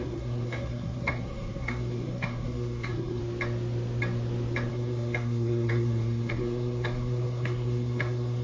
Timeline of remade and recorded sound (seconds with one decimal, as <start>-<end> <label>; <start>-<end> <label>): 0.0-3.2 remade; 3.2-4.7 recorded; 4.7-8.4 remade